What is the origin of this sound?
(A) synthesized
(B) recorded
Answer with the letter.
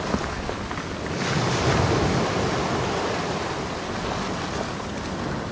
B